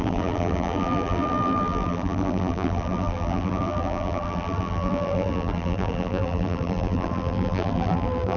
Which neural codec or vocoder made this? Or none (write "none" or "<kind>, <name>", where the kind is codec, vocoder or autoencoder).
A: vocoder, BigVGAN v2